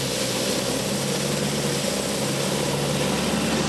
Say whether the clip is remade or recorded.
recorded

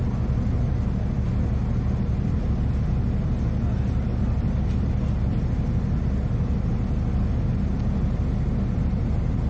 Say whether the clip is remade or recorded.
recorded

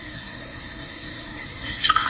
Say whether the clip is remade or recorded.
remade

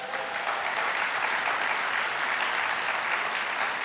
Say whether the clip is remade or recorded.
recorded